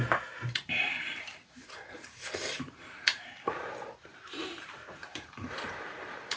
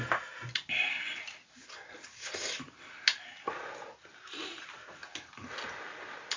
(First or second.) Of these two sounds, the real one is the second